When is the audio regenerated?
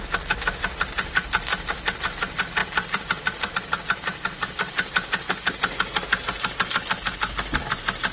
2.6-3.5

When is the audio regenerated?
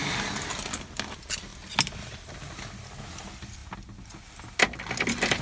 none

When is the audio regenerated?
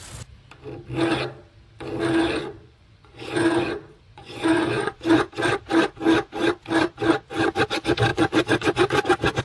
2.4-5.3; 8.1-9.4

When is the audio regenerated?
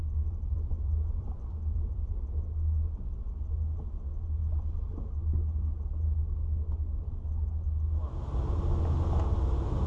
0.0-2.1